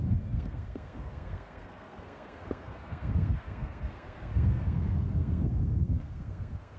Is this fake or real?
fake